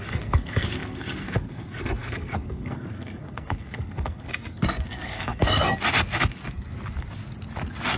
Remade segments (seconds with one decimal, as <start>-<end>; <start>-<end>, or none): 0.0-5.6